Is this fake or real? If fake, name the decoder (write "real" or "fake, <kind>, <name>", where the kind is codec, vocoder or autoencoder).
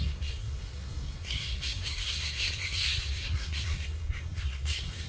fake, codec, SNAC